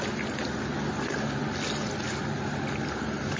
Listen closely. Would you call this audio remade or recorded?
recorded